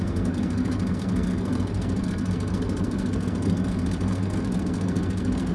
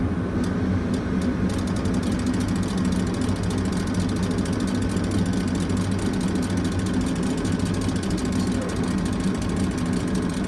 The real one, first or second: second